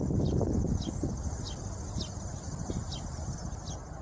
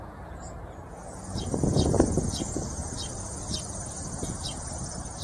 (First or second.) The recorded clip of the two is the first